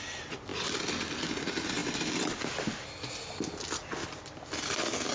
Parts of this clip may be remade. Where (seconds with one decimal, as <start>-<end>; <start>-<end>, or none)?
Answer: none